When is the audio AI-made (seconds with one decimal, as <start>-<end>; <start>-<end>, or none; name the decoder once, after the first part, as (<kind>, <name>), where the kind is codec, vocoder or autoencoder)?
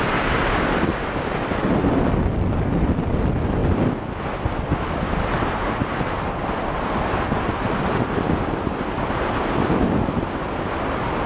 none